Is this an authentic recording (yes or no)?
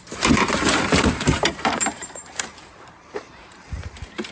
no